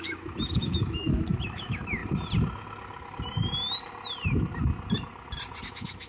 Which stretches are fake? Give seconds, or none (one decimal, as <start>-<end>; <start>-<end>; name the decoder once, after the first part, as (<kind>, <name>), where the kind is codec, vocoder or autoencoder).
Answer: 0.0-2.0 (autoencoder, DAC-VAE); 5.6-6.1